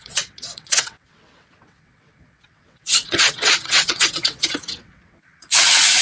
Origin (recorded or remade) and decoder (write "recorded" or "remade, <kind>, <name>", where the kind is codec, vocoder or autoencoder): remade, vocoder, WaveNeXt